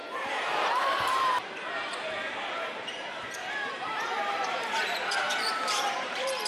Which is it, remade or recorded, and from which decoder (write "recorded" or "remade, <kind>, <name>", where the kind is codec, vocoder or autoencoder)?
remade, vocoder, BigVGAN v2